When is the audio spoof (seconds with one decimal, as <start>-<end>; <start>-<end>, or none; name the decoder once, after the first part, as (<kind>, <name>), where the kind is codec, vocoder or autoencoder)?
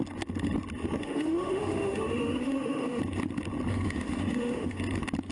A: 1.0-3.0 (autoencoder, DAC-VAE); 3.7-4.8